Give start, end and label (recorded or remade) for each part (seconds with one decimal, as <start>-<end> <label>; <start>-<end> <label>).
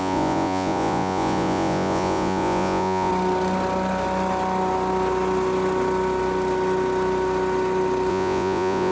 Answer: 0.0-3.1 remade; 3.1-8.1 recorded; 8.1-8.9 remade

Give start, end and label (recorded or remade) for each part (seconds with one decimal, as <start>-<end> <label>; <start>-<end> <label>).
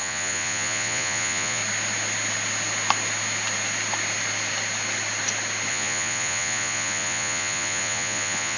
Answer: 0.0-1.6 remade; 1.6-5.7 recorded; 5.7-8.6 remade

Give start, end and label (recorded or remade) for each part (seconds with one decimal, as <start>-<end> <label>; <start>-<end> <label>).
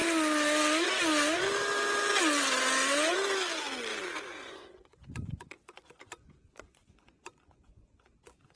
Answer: 0.0-3.9 recorded; 3.9-8.6 remade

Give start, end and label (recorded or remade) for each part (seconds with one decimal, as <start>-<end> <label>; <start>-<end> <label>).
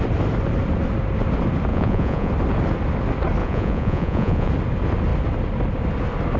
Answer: 0.0-1.7 recorded; 1.7-2.3 remade; 2.3-3.4 recorded; 3.4-4.5 remade; 4.5-6.4 recorded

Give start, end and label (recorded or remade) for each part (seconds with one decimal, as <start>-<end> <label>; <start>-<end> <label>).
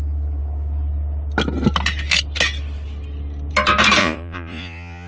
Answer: 0.0-4.0 recorded; 4.0-5.1 remade